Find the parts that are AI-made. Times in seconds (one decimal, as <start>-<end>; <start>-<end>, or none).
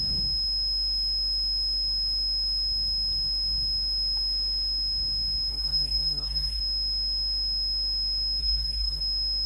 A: 5.5-6.6; 8.4-9.0